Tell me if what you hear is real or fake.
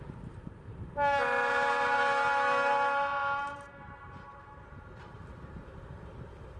fake